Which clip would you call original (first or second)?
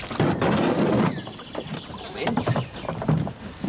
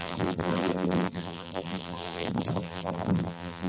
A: first